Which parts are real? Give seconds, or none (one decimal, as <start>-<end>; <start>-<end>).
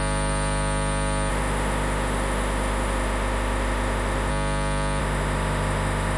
0.0-1.3; 4.3-5.0